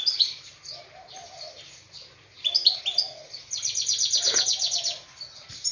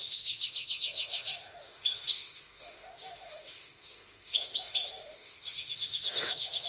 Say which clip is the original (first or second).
first